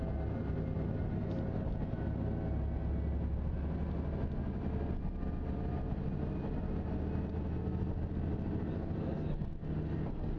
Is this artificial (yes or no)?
no